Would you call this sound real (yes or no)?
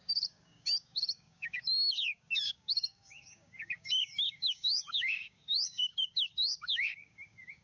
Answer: no